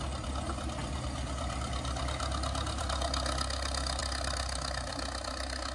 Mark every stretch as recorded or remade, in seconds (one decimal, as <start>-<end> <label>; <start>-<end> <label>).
0.0-5.7 recorded